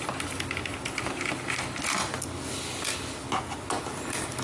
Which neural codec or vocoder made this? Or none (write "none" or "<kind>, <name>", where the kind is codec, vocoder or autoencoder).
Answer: none